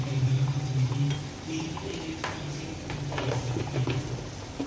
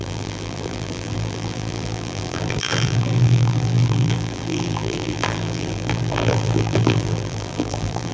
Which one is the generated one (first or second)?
second